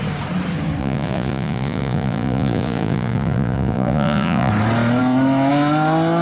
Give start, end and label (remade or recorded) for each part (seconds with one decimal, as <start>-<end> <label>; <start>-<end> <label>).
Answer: 0.0-0.8 recorded; 0.8-4.5 remade; 4.5-6.2 recorded

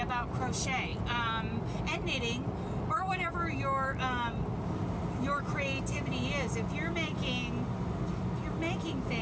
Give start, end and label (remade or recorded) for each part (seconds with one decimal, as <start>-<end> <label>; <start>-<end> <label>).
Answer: 0.0-9.2 recorded

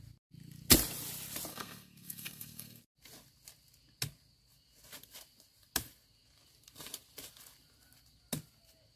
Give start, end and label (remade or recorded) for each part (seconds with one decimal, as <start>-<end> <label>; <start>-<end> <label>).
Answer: 0.0-1.5 recorded; 1.5-2.8 remade; 2.8-9.0 recorded

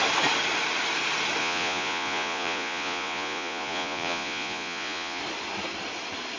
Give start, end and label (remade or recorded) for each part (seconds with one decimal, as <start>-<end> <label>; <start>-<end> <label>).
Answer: 0.0-1.4 recorded; 1.4-5.2 remade; 5.2-6.4 recorded

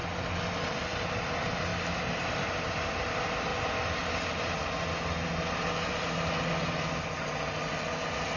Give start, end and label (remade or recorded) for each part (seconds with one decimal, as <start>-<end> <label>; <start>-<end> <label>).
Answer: 0.0-8.4 recorded